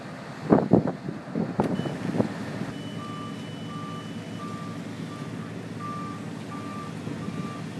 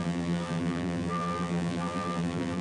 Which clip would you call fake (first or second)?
second